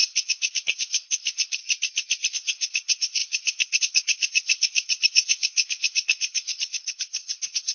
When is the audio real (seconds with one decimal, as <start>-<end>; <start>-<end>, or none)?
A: 1.6-2.3